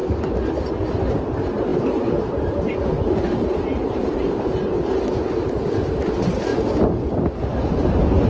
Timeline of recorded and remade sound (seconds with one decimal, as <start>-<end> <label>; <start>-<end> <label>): 0.0-8.3 recorded